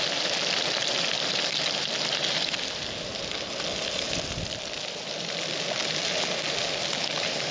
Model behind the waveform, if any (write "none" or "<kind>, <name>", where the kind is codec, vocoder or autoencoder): none